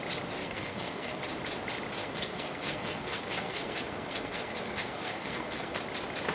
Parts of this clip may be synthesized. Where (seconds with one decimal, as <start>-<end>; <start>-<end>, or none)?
0.4-1.2; 2.0-5.8

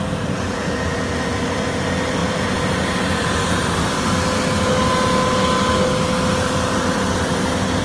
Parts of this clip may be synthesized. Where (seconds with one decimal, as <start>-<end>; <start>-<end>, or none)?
none